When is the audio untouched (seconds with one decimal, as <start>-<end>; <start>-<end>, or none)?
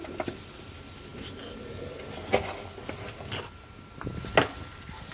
0.0-5.1